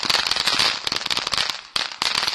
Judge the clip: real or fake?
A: real